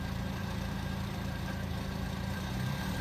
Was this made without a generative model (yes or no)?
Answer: no